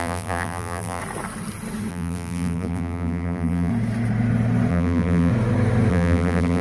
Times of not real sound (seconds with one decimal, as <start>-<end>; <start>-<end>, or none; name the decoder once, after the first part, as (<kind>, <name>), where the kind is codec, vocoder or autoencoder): 0.0-1.0 (vocoder, BigVGAN v2); 1.9-3.7; 4.7-5.3; 5.9-6.6